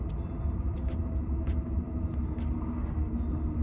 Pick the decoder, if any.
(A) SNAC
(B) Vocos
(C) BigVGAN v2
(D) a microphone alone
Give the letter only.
D